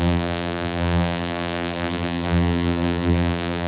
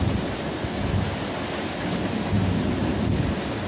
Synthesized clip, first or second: first